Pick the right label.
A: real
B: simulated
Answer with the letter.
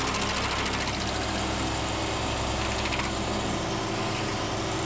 A